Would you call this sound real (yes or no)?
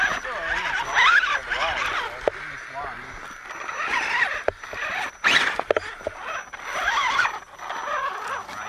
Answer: yes